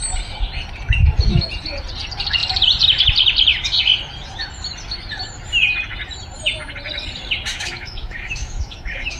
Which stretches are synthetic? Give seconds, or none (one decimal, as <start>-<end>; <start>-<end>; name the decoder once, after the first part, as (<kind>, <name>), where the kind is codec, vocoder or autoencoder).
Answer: 7.5-9.2 (autoencoder, DAC-VAE)